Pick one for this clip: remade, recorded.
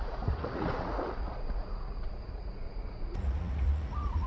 remade